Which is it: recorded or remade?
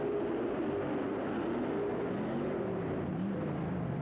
recorded